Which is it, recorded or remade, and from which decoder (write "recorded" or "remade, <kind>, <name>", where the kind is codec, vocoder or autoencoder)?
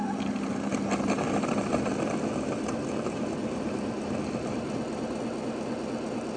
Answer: recorded